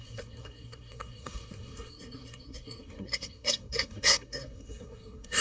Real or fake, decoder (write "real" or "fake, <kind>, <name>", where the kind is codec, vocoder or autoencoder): fake, codec, SNAC